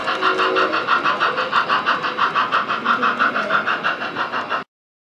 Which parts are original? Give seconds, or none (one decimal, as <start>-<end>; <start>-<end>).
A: 0.0-5.1